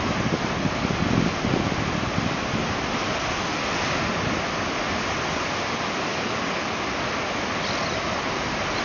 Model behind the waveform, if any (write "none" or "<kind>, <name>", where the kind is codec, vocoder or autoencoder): none